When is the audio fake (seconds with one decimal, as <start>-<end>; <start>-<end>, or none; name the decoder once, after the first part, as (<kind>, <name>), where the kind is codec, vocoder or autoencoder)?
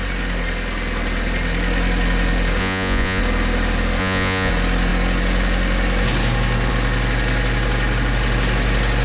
2.6-3.2 (vocoder, Vocos); 4.0-4.5